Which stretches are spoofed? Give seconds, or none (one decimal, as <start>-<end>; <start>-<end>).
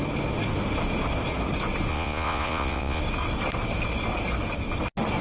1.9-3.0